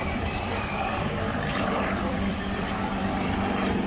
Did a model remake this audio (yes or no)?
yes